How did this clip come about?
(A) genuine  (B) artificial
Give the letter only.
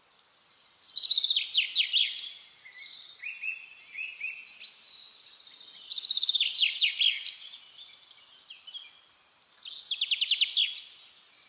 A